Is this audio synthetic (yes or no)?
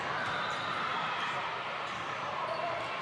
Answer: yes